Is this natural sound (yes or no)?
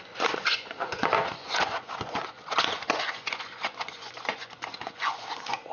no